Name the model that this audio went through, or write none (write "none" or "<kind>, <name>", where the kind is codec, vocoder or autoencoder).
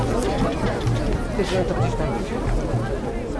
none